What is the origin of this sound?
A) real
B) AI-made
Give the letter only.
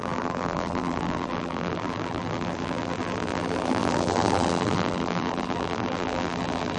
B